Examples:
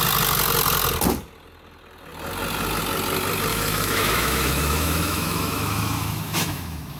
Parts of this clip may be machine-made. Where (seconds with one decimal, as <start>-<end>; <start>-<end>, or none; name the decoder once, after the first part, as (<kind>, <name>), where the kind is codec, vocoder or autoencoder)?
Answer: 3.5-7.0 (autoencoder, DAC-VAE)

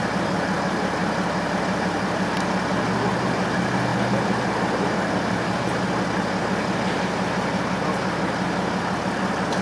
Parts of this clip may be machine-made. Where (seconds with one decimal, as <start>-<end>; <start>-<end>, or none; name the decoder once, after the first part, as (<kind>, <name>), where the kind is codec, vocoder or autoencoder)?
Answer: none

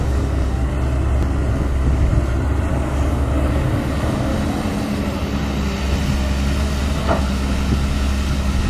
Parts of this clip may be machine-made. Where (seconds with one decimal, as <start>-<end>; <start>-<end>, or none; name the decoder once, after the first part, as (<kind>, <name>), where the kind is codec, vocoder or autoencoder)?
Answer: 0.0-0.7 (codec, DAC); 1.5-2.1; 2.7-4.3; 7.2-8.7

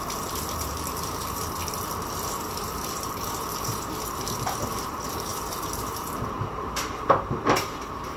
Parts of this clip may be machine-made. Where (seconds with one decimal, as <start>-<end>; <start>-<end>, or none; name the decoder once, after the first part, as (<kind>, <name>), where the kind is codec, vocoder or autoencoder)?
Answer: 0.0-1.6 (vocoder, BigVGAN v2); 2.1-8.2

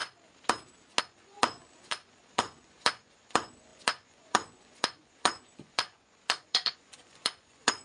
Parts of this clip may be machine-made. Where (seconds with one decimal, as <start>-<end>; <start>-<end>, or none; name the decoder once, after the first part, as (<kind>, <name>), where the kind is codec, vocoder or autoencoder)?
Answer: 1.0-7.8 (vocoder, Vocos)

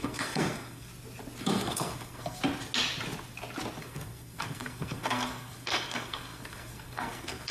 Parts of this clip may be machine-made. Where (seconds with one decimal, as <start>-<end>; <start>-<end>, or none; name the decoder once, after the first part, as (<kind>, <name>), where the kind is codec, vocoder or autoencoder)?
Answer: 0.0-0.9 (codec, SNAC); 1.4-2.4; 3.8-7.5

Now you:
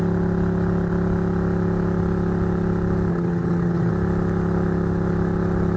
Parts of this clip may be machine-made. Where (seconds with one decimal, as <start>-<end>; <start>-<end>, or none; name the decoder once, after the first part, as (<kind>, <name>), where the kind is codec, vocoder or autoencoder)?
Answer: 3.1-3.9 (vocoder, HiFi-GAN)

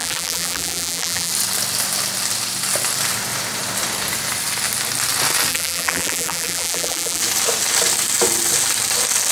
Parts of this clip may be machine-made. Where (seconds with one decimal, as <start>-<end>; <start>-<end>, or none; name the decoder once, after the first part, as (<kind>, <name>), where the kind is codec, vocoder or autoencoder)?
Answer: 0.0-1.3 (vocoder, BigVGAN v2); 5.5-7.2